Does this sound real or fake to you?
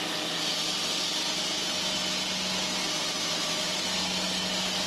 real